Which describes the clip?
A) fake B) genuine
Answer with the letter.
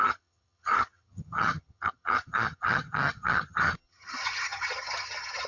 A